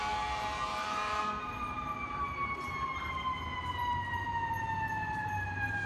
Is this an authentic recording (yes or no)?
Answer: no